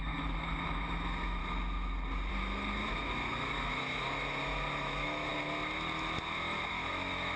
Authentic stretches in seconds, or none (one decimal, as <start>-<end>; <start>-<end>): 1.4-2.3; 5.3-6.7